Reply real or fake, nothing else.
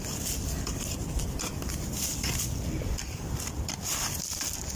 real